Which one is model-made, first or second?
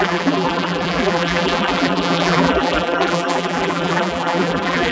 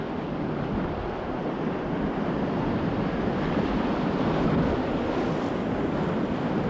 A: first